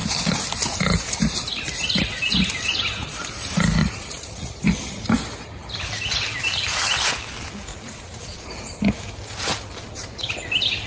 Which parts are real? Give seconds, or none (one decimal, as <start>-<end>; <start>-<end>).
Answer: 0.0-3.8; 4.6-7.7; 8.5-10.9